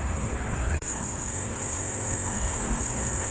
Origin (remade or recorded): remade